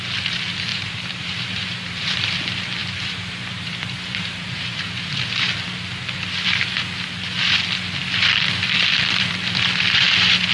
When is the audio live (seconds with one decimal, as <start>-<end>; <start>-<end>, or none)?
0.0-0.7; 2.4-2.8; 5.5-10.5